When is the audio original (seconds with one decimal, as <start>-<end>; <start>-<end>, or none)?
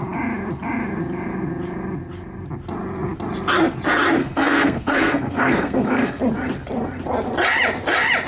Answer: 0.0-4.2; 6.2-8.3